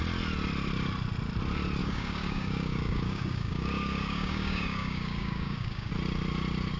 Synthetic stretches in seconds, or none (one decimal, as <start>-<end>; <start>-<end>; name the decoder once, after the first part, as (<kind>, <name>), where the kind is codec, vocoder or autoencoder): 1.8-5.9 (codec, DAC)